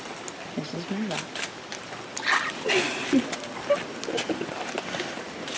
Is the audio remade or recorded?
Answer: recorded